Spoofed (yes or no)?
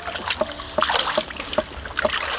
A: no